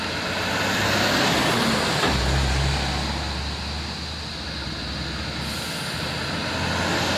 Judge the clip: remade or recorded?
recorded